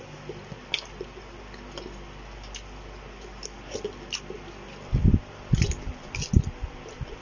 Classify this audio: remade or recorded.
recorded